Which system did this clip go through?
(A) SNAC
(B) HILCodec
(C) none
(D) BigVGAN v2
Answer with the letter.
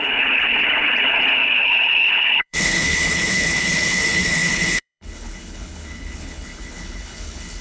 B